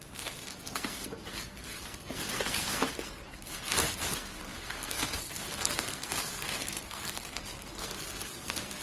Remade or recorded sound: remade